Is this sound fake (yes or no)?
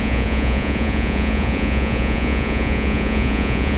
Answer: yes